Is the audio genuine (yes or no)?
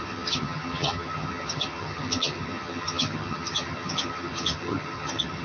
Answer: no